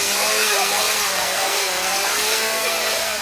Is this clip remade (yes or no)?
yes